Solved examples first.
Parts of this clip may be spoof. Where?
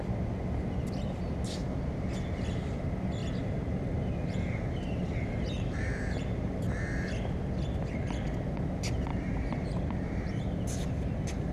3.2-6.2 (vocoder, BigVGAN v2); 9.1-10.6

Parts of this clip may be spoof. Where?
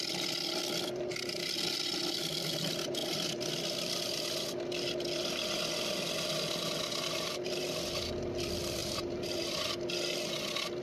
3.0-3.5 (vocoder, BigVGAN v2); 8.8-9.6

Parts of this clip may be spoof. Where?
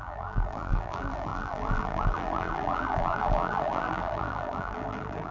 0.0-5.3 (vocoder, BigVGAN v2)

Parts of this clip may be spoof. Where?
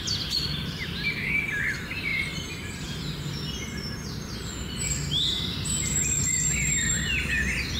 0.0-7.8 (vocoder, BigVGAN v2)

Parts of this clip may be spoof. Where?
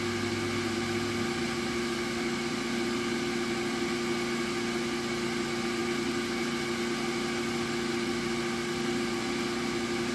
none